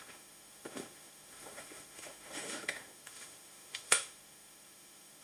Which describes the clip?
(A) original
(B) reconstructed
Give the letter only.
B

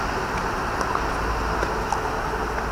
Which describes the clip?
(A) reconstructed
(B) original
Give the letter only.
B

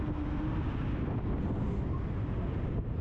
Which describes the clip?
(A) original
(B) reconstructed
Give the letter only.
A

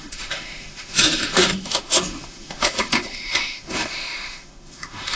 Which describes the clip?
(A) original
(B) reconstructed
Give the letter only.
B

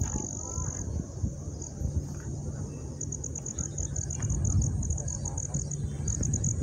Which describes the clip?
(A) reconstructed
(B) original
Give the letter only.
B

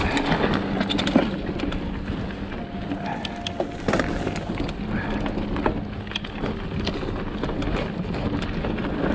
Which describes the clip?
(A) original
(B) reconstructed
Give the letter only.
A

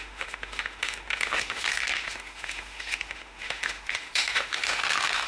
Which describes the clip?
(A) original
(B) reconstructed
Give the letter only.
B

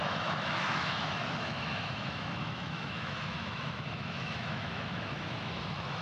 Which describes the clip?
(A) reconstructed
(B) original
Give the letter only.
A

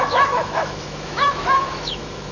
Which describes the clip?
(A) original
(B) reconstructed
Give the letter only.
B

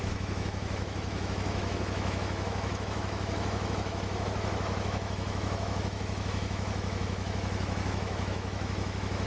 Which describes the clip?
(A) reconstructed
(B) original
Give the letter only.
A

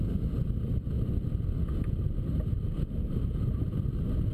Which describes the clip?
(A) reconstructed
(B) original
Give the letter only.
B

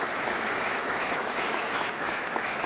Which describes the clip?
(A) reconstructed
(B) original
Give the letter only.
A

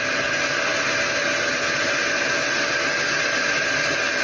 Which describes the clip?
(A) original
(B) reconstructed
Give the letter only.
A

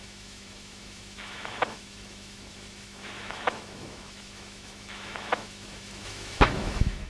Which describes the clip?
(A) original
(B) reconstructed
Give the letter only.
B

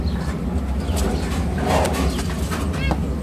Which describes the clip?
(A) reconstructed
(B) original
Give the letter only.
B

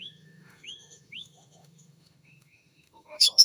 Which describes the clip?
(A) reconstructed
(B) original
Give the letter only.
A